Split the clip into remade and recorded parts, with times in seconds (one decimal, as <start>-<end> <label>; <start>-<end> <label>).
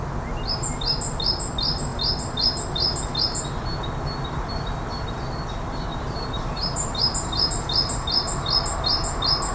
0.0-5.9 recorded; 5.9-7.5 remade; 7.5-9.5 recorded